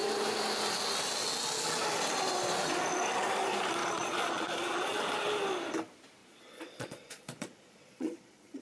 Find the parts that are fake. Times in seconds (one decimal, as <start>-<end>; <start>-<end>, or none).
3.8-5.0; 6.2-8.6